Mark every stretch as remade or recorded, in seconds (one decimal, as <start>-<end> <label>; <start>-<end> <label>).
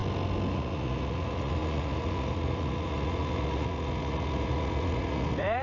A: 0.0-0.5 recorded; 0.5-5.6 remade